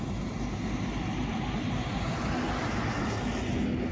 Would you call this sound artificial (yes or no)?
no